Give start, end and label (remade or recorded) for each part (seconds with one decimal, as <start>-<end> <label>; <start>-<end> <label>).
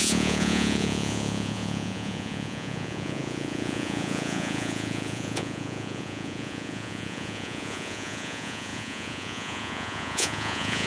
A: 0.0-10.9 remade